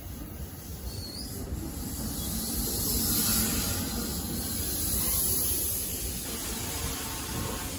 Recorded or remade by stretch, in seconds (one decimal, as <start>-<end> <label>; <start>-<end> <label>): 0.0-7.8 recorded